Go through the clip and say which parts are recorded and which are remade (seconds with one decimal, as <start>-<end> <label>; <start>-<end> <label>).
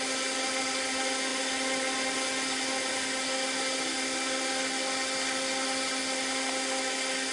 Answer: 0.0-7.3 recorded